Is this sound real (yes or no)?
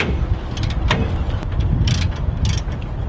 yes